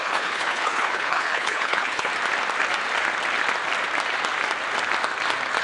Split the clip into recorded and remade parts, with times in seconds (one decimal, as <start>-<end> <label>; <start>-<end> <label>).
0.0-2.1 remade; 2.1-5.6 recorded